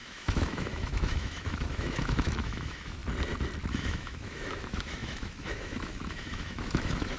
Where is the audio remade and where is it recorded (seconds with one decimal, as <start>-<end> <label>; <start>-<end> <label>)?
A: 0.0-3.0 remade; 3.0-3.7 recorded; 3.7-7.2 remade